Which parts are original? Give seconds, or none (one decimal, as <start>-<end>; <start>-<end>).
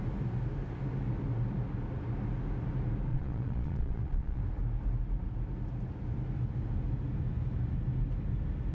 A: 0.0-3.1; 4.4-8.7